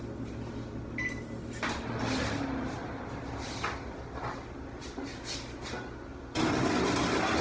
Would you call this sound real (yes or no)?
yes